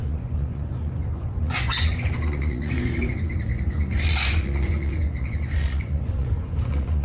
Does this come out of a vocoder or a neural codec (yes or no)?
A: yes